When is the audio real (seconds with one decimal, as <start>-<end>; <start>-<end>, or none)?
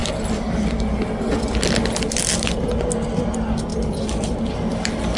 0.0-3.7; 4.5-5.2